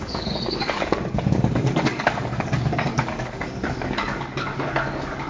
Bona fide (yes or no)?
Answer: no